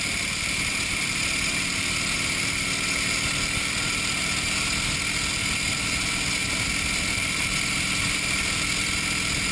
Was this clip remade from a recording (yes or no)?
no